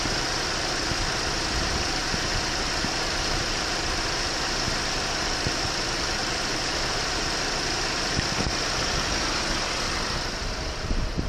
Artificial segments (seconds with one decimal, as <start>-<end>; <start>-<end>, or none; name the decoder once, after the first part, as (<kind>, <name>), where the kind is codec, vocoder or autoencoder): 0.0-2.0 (vocoder, BigVGAN v2); 3.2-11.3